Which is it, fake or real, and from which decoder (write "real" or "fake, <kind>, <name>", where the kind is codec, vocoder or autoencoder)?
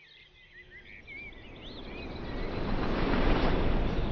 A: real